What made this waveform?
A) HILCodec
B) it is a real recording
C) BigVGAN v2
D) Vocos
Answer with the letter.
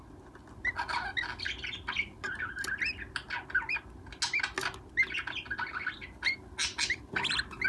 B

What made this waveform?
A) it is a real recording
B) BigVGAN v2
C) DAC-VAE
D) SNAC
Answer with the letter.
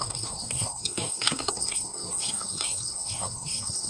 D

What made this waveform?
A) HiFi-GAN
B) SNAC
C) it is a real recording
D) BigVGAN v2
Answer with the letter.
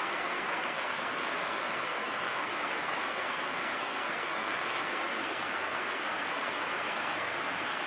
B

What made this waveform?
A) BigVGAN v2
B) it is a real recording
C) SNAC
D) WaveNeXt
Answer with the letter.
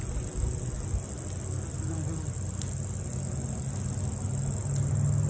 B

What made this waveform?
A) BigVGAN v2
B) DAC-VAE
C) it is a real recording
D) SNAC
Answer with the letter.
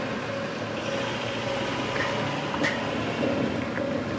C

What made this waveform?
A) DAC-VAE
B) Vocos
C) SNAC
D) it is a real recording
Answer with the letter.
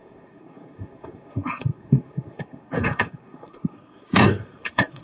C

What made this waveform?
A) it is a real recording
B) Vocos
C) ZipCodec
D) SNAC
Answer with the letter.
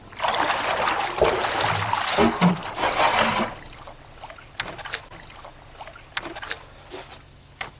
A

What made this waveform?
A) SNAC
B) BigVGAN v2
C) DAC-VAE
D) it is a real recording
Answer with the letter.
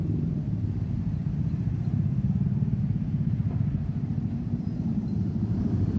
B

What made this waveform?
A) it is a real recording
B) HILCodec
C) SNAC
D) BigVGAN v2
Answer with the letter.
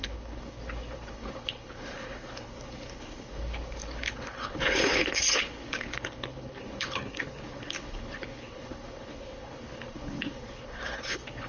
B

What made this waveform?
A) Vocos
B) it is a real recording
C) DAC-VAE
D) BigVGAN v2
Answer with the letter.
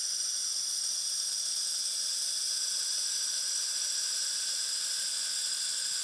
B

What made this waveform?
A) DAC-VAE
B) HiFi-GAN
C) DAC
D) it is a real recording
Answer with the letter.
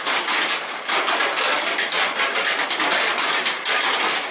D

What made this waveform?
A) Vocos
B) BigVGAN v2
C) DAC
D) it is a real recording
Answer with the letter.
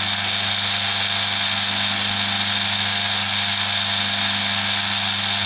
D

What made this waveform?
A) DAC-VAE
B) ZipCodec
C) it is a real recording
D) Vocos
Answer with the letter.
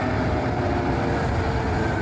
C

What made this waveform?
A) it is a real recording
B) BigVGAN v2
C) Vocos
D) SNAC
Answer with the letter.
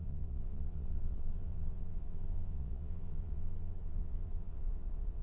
C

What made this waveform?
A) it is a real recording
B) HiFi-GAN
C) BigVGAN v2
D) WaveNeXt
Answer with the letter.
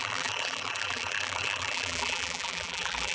C